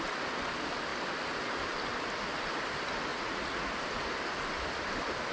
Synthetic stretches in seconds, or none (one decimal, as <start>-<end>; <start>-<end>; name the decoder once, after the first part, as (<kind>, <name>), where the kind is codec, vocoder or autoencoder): 3.1-3.7 (vocoder, Vocos)